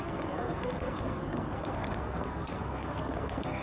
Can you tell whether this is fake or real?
fake